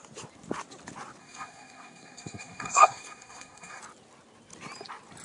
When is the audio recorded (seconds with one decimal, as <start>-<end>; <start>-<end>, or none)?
0.0-1.2; 3.8-5.2